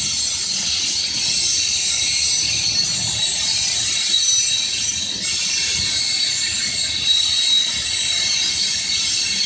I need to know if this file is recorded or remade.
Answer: recorded